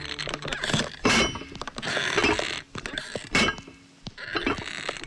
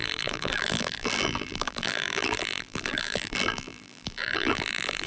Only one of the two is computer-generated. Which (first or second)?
second